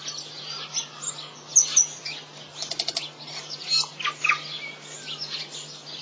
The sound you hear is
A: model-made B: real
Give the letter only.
B